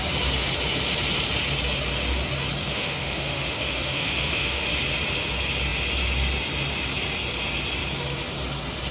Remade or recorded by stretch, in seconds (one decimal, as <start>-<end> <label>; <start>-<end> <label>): 0.0-2.6 recorded; 2.6-4.6 remade; 4.6-8.9 recorded